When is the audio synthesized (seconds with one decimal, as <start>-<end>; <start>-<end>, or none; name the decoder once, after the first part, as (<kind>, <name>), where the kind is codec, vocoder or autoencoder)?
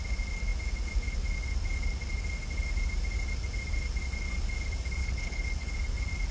5.0-5.7 (codec, HILCodec)